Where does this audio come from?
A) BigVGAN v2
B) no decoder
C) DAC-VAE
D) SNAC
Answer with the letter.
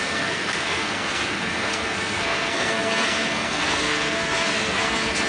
D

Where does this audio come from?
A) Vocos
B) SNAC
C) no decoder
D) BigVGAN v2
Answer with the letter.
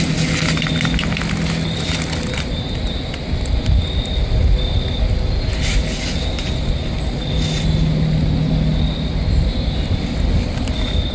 C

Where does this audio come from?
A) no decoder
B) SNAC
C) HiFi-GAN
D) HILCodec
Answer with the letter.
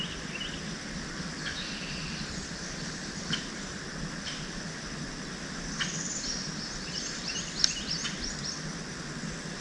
A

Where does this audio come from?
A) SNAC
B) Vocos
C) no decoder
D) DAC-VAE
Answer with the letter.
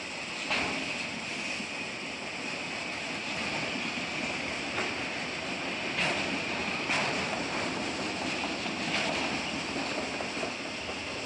C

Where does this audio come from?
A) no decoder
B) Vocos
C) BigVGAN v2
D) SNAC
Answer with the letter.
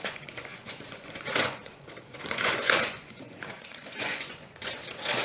B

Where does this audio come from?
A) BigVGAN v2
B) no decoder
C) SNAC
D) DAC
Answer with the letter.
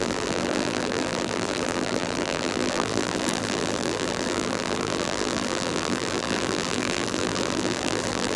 A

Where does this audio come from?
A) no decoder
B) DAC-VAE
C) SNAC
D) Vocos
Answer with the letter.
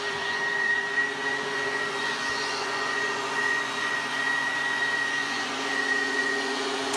D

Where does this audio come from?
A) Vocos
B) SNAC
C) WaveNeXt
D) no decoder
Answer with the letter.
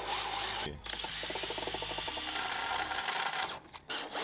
D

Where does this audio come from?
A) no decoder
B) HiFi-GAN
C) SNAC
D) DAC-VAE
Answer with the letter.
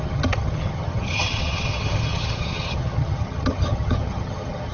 B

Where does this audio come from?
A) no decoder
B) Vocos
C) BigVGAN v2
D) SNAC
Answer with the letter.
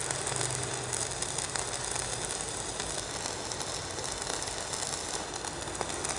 A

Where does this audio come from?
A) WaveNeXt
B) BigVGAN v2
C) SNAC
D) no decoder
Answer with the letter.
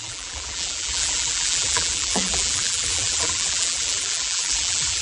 B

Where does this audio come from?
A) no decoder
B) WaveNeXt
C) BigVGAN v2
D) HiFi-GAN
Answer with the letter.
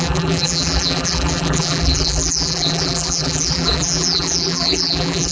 C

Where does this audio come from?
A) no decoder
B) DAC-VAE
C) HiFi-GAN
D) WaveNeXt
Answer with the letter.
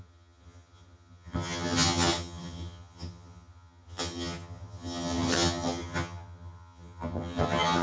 C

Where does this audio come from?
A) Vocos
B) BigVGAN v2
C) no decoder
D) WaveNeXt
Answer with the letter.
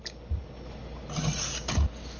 C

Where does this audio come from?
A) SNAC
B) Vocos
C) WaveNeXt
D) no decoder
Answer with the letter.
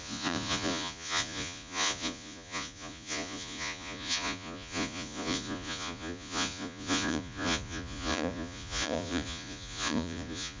B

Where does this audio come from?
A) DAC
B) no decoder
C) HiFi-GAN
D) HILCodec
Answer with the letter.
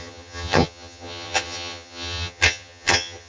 C